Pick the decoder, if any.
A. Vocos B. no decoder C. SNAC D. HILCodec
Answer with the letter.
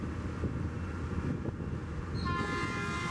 B